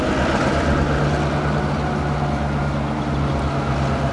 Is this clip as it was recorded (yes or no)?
yes